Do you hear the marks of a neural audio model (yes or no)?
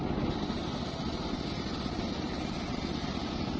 no